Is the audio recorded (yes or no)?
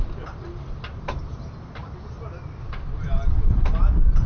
yes